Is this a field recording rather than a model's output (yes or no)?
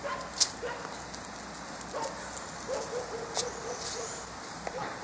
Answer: yes